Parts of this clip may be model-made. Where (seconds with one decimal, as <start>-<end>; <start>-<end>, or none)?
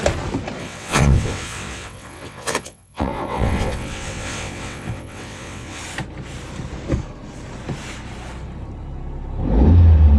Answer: 0.6-5.8